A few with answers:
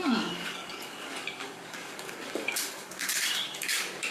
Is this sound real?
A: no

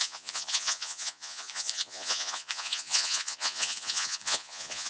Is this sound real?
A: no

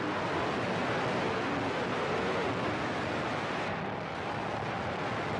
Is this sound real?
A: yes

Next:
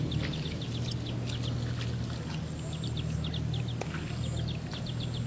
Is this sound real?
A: yes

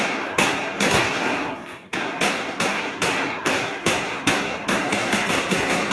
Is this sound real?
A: no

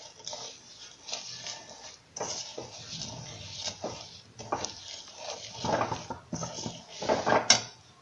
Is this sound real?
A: yes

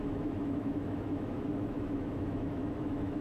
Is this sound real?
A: no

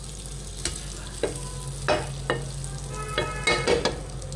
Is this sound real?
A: yes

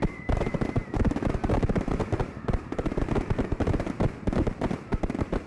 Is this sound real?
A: no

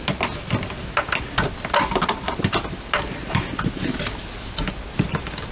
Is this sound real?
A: yes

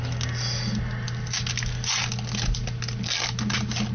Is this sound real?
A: yes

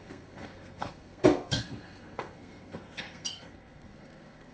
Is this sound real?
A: no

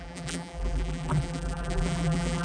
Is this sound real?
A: no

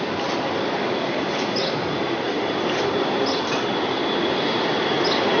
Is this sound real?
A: yes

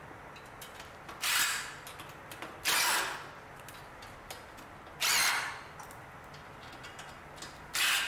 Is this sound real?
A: yes